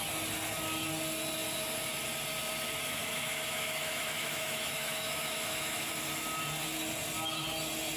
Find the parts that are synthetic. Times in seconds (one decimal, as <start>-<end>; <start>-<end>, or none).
3.0-5.9